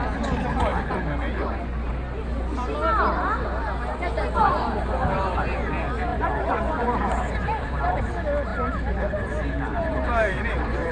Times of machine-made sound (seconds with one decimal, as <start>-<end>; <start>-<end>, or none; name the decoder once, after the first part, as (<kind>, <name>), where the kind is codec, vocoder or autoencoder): 6.1-8.0 (vocoder, BigVGAN v2); 9.7-10.9